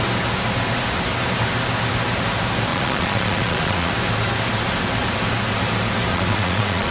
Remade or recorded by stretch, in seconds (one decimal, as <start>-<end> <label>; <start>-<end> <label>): 0.0-2.7 recorded; 2.7-3.9 remade; 3.9-6.1 recorded; 6.1-6.9 remade